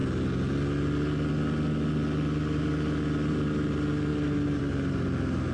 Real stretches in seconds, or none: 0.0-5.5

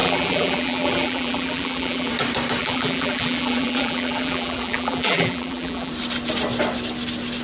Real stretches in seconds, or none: 2.1-2.6; 5.9-7.4

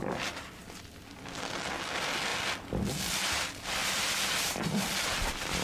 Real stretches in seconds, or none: 0.0-0.6; 1.7-3.8; 5.0-5.6

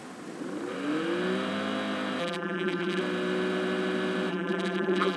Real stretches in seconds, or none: 0.0-2.2; 3.0-4.3

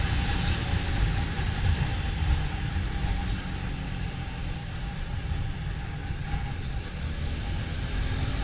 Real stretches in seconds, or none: 0.0-1.9; 2.7-4.6; 5.7-8.4

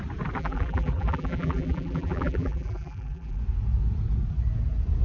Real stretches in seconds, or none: 0.0-0.4; 3.4-5.0